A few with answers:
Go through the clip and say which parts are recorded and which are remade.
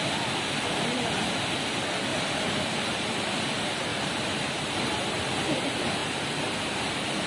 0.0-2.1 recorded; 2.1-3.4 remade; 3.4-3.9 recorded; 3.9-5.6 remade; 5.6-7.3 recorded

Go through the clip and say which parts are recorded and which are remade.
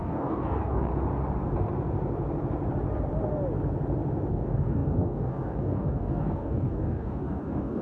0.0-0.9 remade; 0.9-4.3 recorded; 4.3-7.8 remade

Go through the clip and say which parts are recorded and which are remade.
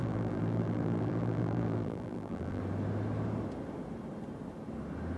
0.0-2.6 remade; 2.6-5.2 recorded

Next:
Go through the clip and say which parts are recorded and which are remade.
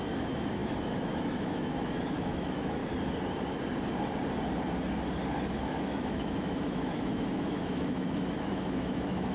0.0-2.8 remade; 2.8-5.6 recorded; 5.6-9.3 remade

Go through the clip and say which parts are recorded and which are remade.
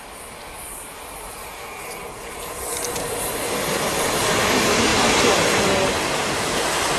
0.0-7.0 recorded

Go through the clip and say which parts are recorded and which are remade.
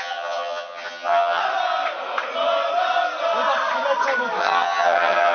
0.0-1.4 remade; 1.4-4.4 recorded; 4.4-5.3 remade